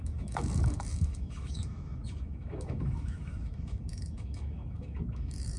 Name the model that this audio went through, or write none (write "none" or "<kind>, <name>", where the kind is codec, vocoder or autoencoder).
autoencoder, DAC-VAE